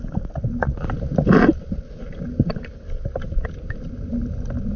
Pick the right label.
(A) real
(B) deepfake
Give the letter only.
A